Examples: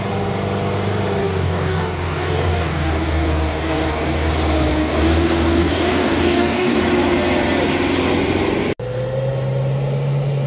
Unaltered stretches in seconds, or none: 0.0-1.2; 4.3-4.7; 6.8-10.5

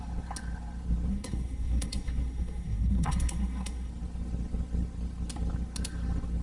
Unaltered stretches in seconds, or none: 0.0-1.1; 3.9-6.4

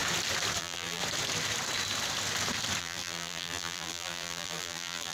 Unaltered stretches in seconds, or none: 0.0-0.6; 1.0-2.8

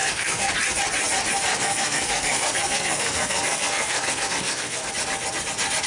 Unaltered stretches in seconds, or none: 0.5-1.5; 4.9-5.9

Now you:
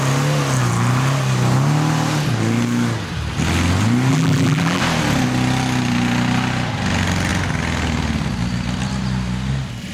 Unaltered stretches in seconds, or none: 0.0-4.1; 4.8-9.9

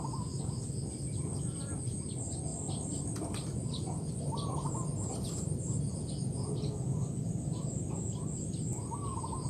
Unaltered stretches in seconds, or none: 0.0-2.5; 4.1-9.5